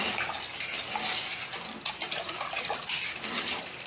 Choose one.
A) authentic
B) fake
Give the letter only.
A